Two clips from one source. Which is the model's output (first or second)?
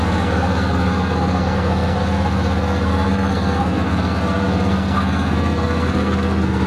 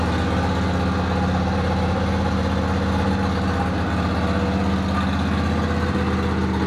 first